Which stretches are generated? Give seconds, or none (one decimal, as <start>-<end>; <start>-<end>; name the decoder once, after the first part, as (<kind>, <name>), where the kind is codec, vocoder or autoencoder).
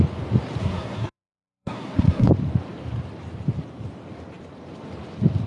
0.6-2.3 (codec, SNAC)